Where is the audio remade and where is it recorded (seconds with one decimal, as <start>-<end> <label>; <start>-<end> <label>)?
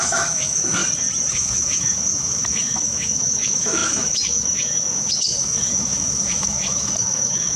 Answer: 0.0-0.8 remade; 0.8-1.3 recorded; 1.3-7.6 remade